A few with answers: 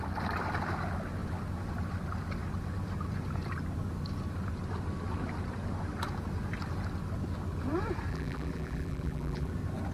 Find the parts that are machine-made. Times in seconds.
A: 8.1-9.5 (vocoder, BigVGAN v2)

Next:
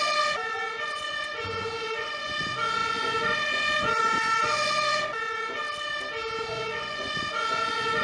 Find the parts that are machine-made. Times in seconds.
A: 0.0-5.6 (vocoder, Vocos); 6.4-8.0